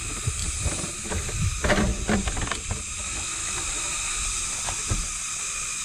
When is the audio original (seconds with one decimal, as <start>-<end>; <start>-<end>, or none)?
0.0-0.4; 1.3-5.8

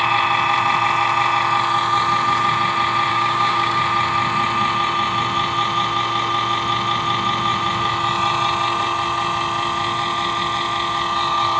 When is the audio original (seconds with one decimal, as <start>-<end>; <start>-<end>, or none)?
0.0-3.1; 3.8-11.6